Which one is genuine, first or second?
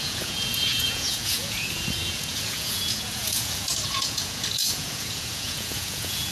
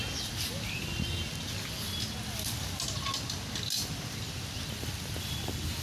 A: second